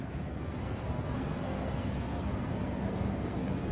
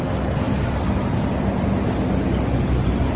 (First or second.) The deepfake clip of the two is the first